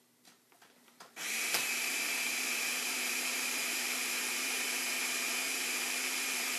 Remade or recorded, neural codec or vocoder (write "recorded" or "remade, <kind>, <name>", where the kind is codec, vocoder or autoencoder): remade, vocoder, BigVGAN v2